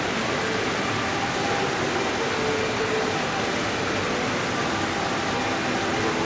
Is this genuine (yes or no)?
yes